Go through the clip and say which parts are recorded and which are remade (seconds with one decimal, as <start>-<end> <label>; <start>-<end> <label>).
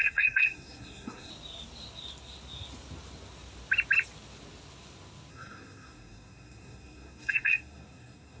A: 0.0-1.3 remade; 1.3-5.3 recorded; 5.3-8.4 remade